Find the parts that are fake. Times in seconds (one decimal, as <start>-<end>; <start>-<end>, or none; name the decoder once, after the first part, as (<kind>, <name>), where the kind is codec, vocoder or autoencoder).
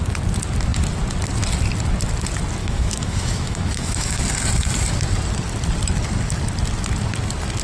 2.6-4.2 (autoencoder, DAC-VAE)